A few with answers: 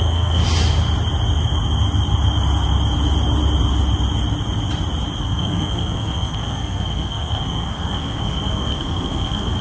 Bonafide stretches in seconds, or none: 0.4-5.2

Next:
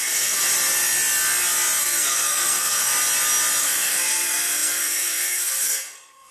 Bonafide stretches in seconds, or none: 0.4-1.8; 2.9-3.6